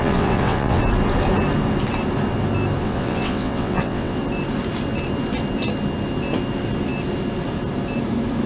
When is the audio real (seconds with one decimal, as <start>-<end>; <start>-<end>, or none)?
0.8-2.8; 4.2-8.5